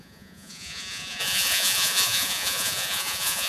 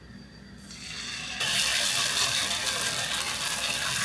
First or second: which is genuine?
second